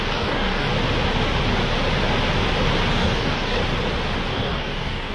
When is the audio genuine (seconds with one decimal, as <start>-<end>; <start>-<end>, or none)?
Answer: 0.7-2.9; 3.6-4.3